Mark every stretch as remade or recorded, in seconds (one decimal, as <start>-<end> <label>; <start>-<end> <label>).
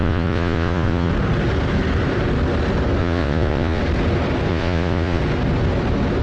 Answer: 0.0-1.1 remade; 1.1-3.0 recorded; 3.0-3.8 remade; 3.8-4.5 recorded; 4.5-5.2 remade; 5.2-6.2 recorded